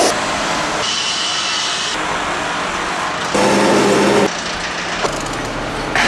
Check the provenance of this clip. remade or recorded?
recorded